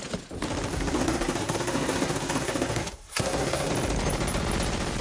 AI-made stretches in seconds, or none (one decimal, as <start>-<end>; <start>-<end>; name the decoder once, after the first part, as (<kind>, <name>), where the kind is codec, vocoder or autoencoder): 0.7-3.7 (codec, SNAC)